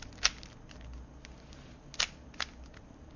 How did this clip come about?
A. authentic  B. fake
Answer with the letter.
A